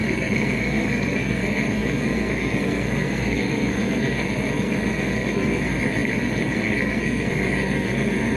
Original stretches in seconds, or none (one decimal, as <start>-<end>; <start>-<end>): none